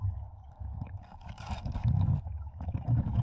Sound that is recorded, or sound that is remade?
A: remade